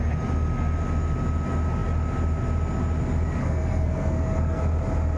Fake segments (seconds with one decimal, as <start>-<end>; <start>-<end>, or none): 3.4-4.6